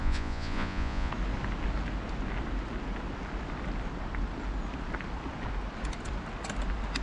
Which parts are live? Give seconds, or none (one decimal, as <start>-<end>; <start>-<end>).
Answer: 1.1-7.0